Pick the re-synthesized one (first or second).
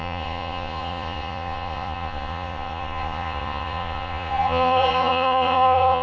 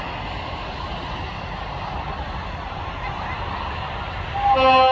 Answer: first